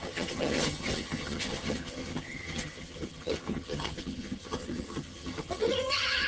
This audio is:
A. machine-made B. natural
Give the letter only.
A